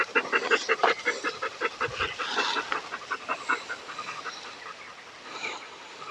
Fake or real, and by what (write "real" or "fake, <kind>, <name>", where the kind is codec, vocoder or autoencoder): real